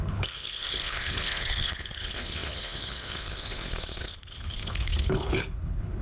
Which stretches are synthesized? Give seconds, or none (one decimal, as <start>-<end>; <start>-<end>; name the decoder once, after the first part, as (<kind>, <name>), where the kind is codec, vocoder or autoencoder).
0.0-6.0 (codec, HILCodec)